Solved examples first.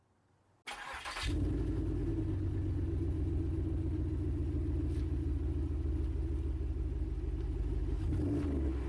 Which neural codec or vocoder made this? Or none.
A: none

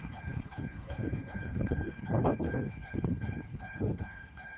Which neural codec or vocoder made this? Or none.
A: codec, HILCodec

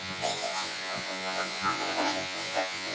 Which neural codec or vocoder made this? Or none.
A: vocoder, Vocos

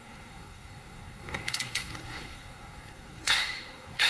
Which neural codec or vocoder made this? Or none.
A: codec, SNAC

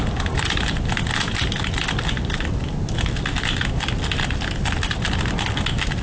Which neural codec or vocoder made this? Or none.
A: none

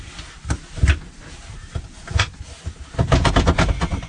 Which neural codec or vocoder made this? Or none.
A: none